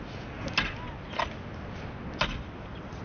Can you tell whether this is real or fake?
real